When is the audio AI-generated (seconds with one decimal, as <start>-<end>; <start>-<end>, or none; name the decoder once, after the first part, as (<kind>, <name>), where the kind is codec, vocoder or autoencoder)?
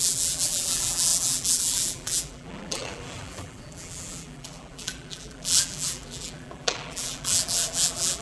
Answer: 0.0-8.2 (vocoder, BigVGAN v2)